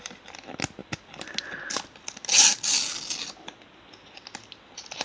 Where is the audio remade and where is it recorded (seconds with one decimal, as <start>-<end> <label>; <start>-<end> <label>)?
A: 0.0-5.0 recorded